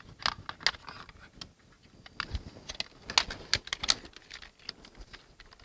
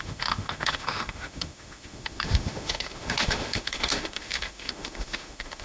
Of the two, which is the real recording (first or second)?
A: first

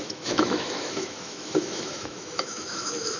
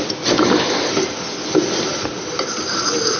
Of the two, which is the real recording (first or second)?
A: second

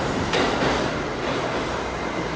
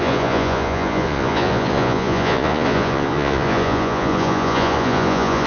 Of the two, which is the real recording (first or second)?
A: first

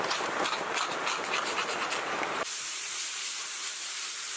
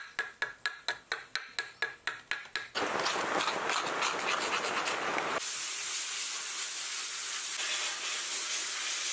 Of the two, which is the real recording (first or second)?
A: second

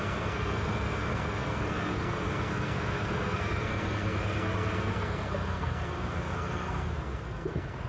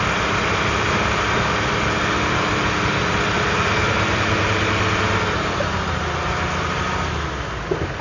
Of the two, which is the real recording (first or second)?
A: second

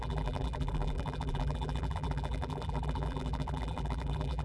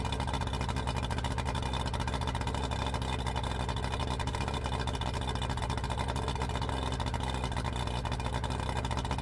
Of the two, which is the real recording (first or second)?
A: second